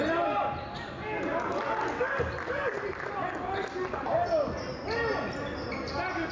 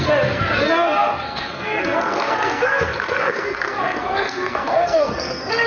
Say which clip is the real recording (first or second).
first